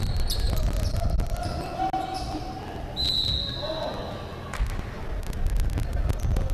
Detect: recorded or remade recorded